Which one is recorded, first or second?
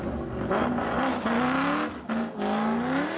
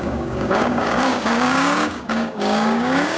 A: first